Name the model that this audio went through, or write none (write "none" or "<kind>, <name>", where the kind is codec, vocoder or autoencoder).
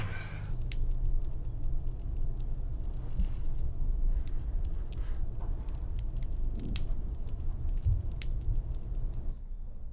none